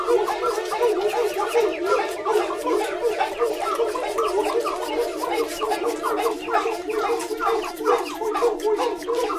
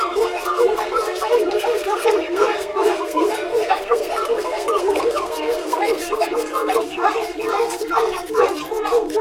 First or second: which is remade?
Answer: second